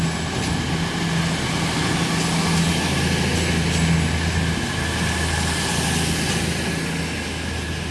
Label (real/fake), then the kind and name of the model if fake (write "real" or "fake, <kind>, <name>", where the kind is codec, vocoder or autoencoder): real